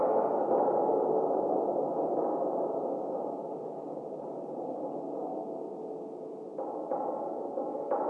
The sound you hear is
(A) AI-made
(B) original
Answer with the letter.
A